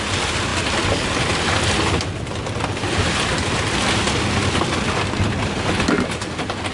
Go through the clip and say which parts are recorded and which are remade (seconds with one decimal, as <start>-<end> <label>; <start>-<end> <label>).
0.0-6.7 recorded